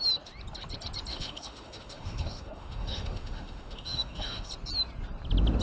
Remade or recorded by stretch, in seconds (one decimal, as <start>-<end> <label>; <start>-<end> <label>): 0.0-1.1 recorded; 1.1-4.5 remade; 4.5-5.6 recorded